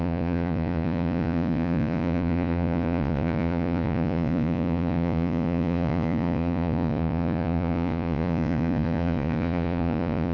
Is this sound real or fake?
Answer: fake